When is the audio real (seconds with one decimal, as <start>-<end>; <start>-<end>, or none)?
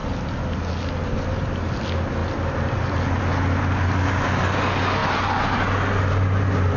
0.0-6.8